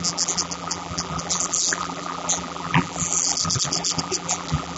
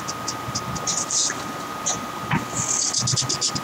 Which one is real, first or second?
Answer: second